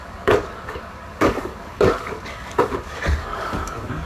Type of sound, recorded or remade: remade